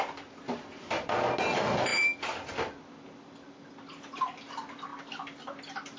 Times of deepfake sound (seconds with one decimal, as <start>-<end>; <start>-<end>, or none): none